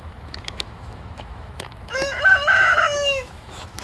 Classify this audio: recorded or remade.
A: remade